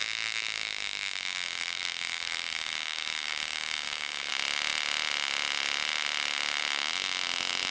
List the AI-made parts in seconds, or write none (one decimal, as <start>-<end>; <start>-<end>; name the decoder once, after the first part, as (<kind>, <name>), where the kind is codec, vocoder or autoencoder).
0.0-4.3 (codec, DAC)